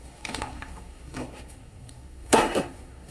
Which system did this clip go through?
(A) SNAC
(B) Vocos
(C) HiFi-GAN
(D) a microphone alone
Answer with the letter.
A